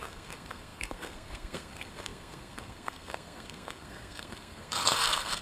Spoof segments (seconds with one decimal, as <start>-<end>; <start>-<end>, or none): 0.0-5.4